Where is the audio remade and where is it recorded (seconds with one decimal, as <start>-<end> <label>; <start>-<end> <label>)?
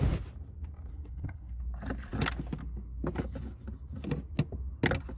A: 0.0-0.9 recorded; 0.9-1.6 remade; 1.6-5.2 recorded